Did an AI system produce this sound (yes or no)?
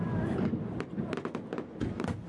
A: no